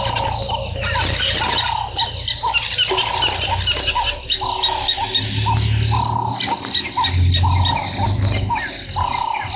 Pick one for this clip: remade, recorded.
recorded